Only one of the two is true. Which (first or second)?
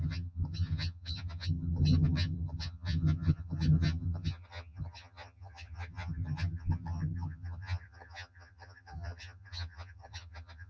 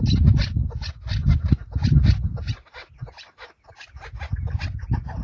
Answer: second